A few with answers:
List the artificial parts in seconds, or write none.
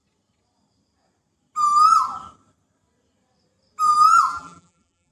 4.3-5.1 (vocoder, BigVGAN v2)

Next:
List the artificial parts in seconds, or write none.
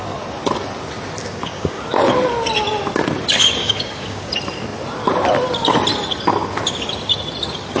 1.2-1.8 (codec, DAC); 3.6-4.3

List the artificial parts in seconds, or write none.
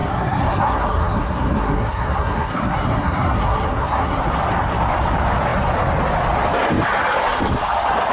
0.0-4.3 (codec, SNAC)